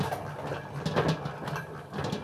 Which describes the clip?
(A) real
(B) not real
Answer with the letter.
A